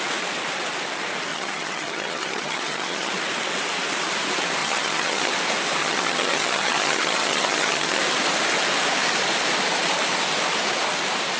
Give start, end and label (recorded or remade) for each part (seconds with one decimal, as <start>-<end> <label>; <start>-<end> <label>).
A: 0.0-1.3 recorded; 1.3-3.1 remade; 3.1-4.6 recorded; 4.6-5.3 remade; 5.3-5.8 recorded; 5.8-8.0 remade; 8.0-11.4 recorded